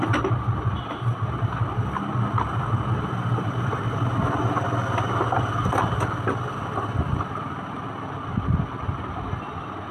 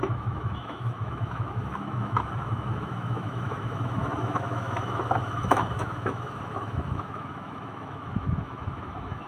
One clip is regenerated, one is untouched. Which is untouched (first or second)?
first